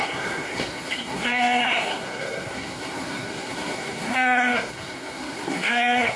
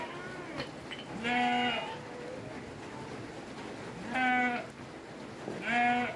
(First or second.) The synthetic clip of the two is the first